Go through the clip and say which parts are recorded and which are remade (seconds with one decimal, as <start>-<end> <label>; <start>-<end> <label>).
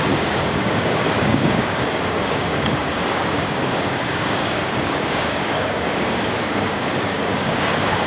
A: 0.0-8.1 remade